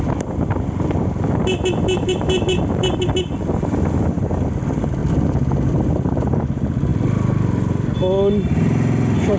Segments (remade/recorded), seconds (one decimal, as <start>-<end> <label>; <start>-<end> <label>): 0.0-9.4 recorded